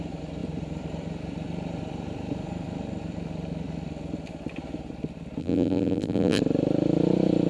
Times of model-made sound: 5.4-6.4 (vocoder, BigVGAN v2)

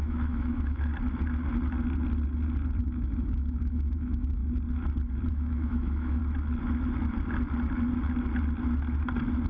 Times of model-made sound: 0.0-0.9 (autoencoder, DAC-VAE); 2.8-4.4; 5.3-6.2

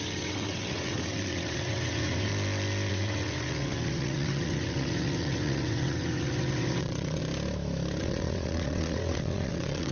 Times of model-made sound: 0.0-2.3 (vocoder, WaveNeXt); 2.9-7.2; 8.0-9.9